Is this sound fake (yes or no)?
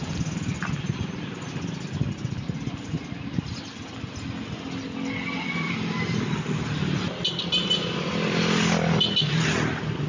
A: no